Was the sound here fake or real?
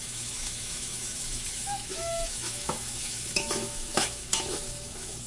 fake